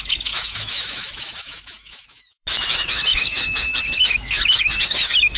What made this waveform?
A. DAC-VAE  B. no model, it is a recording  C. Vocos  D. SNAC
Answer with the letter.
A